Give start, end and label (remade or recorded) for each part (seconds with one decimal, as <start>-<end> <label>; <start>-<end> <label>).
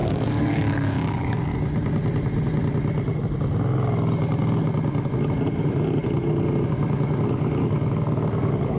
0.0-1.5 remade; 1.5-6.7 recorded; 6.7-8.8 remade